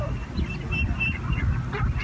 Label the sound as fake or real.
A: real